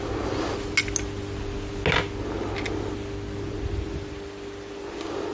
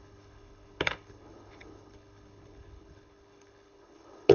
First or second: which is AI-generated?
second